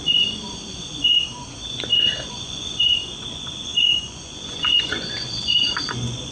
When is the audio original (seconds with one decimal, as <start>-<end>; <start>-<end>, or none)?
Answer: none